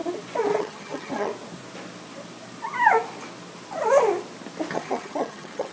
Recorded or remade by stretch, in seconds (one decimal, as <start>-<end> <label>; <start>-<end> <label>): 0.0-0.6 recorded; 0.6-1.3 remade; 1.3-4.7 recorded; 4.7-5.7 remade